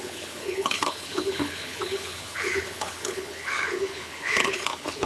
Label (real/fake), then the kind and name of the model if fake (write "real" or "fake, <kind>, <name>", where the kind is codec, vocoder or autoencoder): fake, codec, HILCodec